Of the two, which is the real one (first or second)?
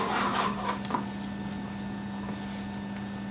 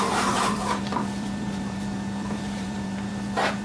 first